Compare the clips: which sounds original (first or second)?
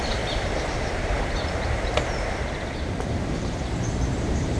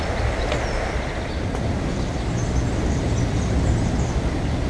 second